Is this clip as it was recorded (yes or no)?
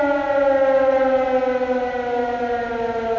yes